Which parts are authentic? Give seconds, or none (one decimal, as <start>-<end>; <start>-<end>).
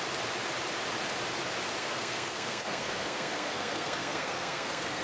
0.0-1.8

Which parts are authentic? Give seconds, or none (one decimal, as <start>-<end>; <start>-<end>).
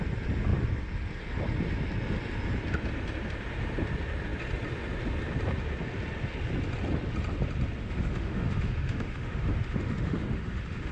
0.0-7.8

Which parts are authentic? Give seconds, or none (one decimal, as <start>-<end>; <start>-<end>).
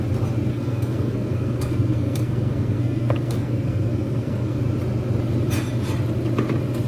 0.0-0.5; 4.6-6.9